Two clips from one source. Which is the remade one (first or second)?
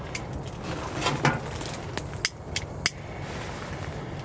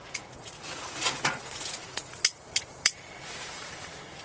second